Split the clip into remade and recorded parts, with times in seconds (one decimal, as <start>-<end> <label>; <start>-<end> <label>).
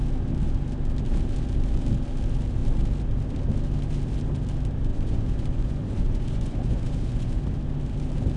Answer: 0.0-4.9 recorded; 4.9-7.4 remade; 7.4-8.4 recorded